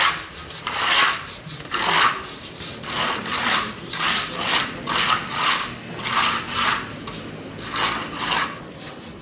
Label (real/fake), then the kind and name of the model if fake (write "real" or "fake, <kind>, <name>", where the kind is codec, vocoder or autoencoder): real